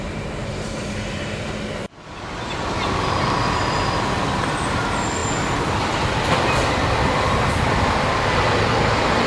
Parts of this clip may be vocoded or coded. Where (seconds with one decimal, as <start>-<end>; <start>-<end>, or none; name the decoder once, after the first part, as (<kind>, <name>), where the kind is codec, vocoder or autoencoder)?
0.0-1.8 (vocoder, BigVGAN v2); 4.5-5.2; 8.6-9.3